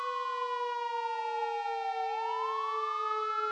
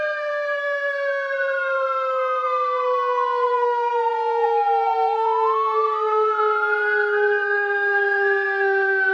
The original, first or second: first